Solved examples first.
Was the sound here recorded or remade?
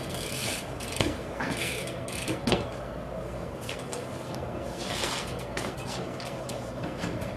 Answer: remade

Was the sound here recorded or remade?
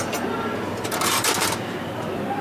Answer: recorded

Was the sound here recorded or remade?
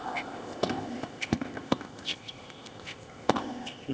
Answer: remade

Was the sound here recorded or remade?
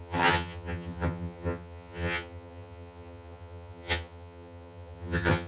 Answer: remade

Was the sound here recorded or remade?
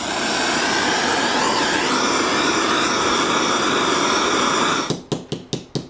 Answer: recorded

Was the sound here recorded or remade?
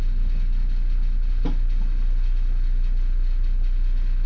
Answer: recorded